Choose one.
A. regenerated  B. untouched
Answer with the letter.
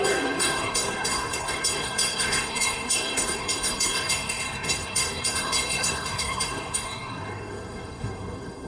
A